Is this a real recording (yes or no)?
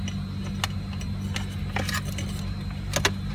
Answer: yes